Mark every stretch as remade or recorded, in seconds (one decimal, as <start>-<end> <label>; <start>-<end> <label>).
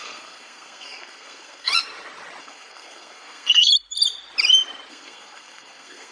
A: 0.0-1.7 remade; 1.7-2.4 recorded; 2.4-3.7 remade; 3.7-4.9 recorded; 4.9-6.1 remade